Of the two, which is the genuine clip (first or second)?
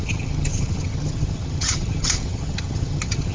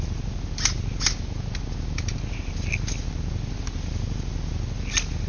second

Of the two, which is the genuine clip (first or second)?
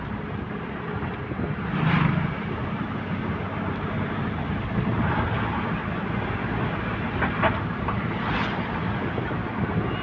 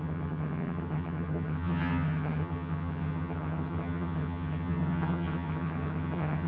first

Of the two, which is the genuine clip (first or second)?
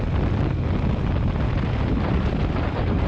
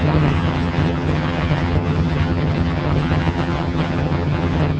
first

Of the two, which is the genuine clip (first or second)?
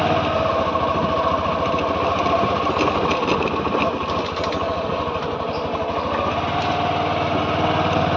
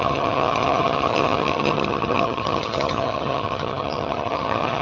first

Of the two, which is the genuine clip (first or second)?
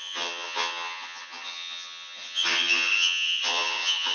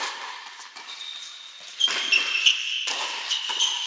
second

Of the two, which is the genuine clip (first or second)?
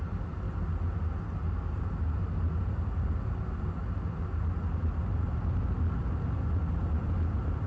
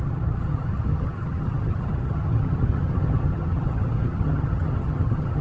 first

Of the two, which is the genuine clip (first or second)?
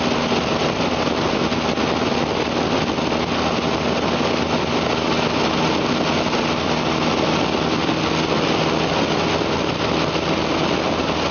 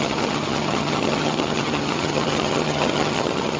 first